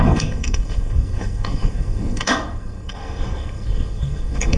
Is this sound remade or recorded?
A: remade